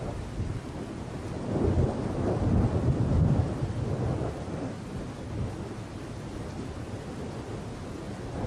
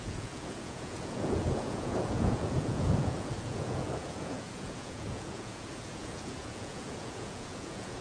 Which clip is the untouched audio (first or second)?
first